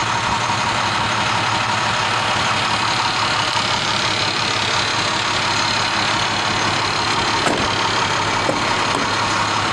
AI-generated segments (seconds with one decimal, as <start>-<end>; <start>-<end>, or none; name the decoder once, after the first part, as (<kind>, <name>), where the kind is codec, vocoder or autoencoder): none